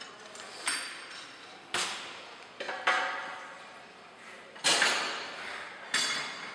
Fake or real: real